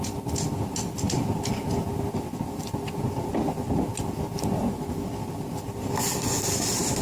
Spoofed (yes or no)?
no